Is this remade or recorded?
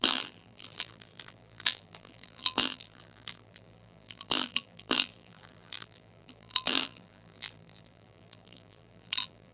remade